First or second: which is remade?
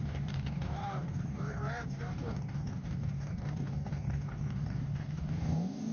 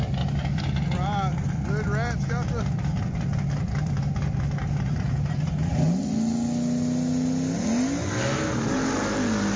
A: first